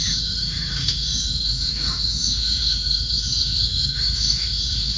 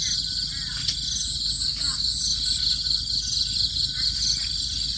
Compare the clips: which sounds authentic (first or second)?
second